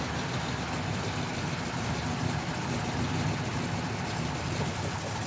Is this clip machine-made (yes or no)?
no